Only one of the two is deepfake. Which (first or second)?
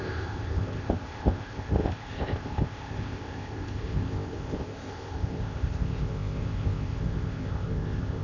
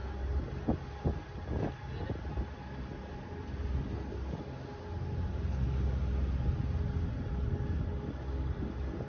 first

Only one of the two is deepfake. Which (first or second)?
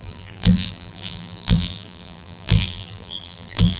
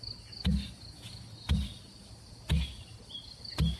first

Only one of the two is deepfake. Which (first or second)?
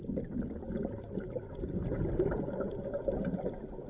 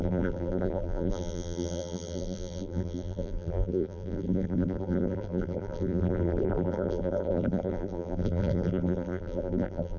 second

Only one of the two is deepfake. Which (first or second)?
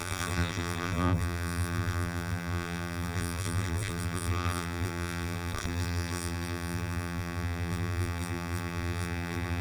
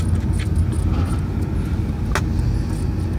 first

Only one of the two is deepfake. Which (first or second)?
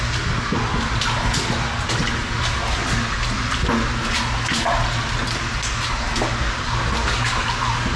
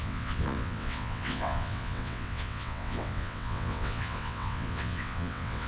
second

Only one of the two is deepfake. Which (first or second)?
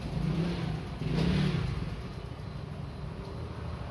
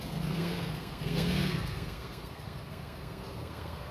second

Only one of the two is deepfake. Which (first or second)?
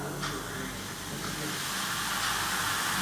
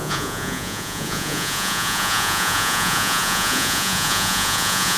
second